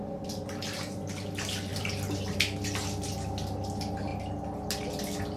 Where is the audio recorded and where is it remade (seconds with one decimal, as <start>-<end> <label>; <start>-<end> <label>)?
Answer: 0.0-1.7 recorded; 1.7-2.4 remade; 2.4-5.4 recorded